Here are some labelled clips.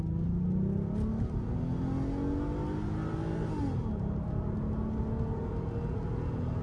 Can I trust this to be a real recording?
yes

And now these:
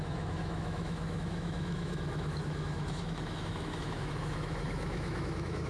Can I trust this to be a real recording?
no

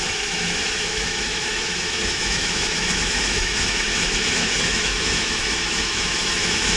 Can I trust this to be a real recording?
no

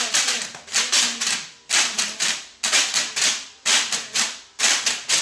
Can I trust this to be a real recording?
yes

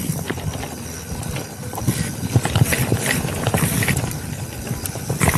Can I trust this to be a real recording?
yes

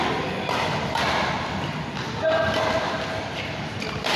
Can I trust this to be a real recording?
yes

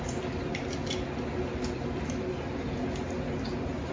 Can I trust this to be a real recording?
yes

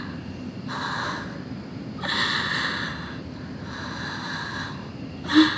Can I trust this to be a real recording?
yes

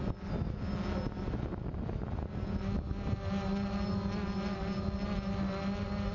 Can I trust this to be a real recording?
yes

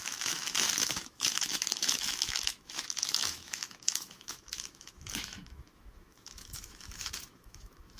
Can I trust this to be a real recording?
no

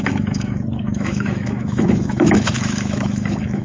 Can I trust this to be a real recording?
no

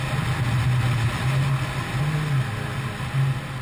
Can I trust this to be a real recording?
yes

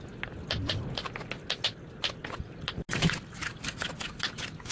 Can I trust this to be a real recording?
yes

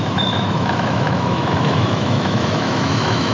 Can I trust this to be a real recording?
no